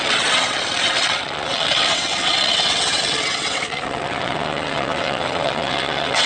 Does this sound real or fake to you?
fake